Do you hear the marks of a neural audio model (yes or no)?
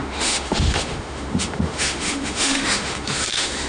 yes